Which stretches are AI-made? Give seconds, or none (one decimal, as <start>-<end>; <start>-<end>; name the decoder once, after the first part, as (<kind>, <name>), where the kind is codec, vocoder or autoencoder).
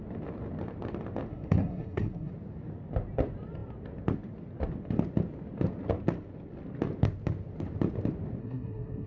1.3-2.3 (codec, SNAC); 8.4-9.1